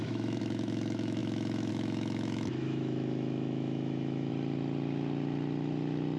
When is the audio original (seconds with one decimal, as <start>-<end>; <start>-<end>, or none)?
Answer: 4.3-6.2